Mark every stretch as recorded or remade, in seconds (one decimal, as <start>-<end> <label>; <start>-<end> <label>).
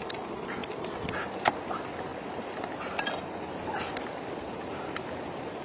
0.0-5.6 recorded